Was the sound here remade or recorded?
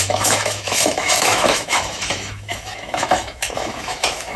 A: remade